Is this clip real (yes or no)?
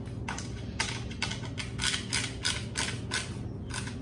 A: yes